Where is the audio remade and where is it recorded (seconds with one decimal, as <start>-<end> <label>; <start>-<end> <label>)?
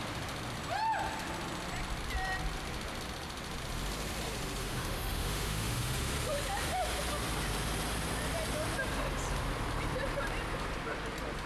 0.0-4.6 recorded; 4.6-6.1 remade; 6.1-11.5 recorded